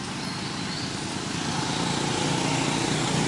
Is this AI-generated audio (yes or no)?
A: no